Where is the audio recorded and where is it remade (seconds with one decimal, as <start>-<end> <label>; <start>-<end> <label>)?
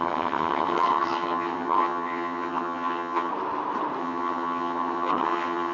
0.0-3.3 remade; 3.3-4.0 recorded; 4.0-5.7 remade